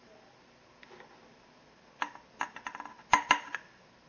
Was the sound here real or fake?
real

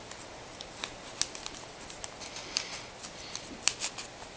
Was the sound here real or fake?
real